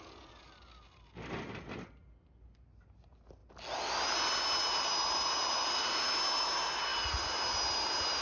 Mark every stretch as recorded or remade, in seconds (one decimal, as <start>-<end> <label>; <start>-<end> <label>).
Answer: 0.0-8.2 recorded